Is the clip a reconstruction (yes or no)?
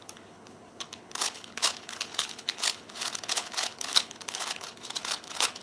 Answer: yes